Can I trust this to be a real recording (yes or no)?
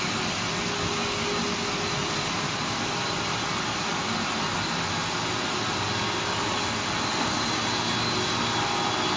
yes